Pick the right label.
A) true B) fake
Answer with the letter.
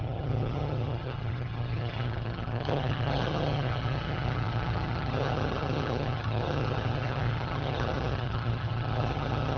B